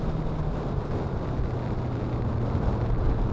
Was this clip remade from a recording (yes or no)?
no